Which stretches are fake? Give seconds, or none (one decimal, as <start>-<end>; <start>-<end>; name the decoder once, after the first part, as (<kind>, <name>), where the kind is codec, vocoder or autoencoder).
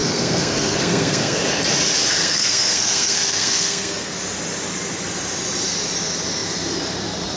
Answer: 0.0-1.4 (codec, SNAC); 2.2-4.1